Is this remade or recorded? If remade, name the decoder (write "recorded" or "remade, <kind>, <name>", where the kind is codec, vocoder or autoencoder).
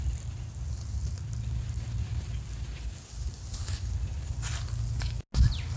recorded